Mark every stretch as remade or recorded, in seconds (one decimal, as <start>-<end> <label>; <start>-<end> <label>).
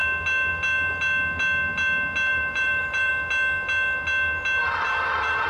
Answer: 0.0-2.3 recorded; 2.3-3.1 remade; 3.1-4.6 recorded; 4.6-5.5 remade